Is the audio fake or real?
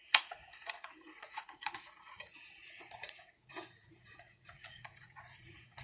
fake